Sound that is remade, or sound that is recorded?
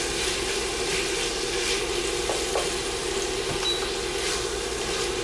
recorded